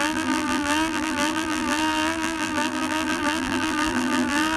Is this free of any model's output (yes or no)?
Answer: no